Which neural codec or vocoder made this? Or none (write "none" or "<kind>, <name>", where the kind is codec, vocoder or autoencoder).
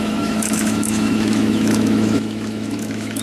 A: autoencoder, DAC-VAE